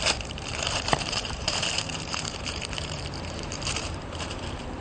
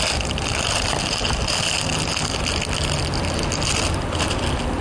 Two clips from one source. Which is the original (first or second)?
second